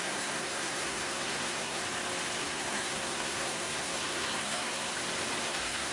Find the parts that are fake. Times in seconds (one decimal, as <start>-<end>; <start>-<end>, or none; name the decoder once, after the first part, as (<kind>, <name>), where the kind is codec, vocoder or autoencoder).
0.0-1.8 (codec, SNAC); 2.4-4.9; 5.4-5.9

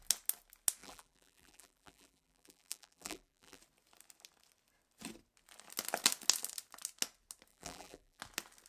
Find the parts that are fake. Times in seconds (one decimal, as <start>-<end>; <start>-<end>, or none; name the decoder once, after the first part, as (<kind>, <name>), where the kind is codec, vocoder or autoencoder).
0.8-3.6 (vocoder, BigVGAN v2); 7.5-8.2

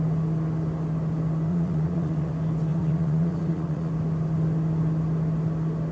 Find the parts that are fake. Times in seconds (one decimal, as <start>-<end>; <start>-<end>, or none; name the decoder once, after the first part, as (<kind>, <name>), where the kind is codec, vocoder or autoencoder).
1.5-2.3 (vocoder, Vocos); 2.7-3.9

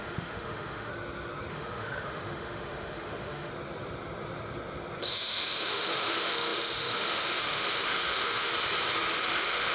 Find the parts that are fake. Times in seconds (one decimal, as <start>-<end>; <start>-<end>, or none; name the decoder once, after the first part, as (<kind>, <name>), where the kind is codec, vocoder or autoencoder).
0.0-0.9 (autoencoder, DAC-VAE); 1.5-3.5; 5.0-8.5; 9.1-9.7